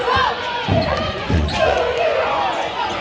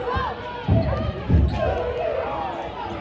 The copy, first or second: first